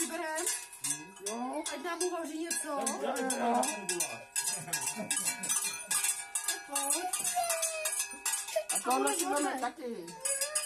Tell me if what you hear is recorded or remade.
recorded